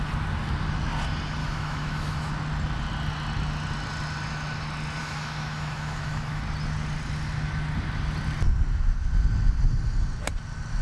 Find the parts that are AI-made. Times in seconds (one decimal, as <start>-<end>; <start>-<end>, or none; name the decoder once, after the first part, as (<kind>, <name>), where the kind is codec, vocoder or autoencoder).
1.4-2.3 (autoencoder, DAC-VAE); 5.0-6.4